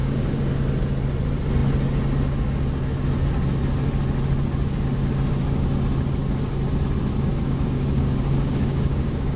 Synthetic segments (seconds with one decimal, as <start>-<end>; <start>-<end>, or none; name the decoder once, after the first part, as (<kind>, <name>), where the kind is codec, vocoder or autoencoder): 0.0-0.6 (codec, DAC); 7.3-9.4